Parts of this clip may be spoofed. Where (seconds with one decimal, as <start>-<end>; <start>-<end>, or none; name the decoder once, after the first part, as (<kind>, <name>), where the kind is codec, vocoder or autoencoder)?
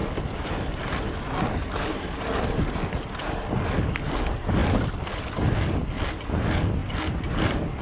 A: none